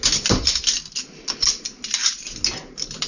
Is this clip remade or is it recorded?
recorded